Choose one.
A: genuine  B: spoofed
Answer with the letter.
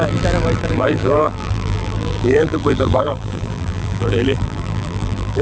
B